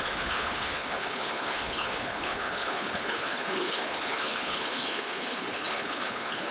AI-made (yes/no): yes